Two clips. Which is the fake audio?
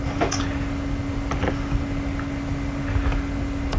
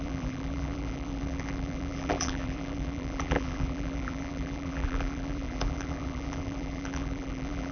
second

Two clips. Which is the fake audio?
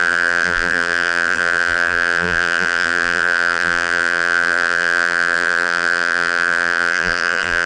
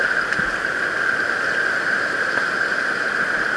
first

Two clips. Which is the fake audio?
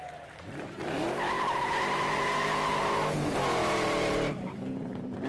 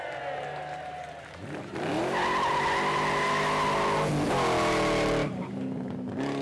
first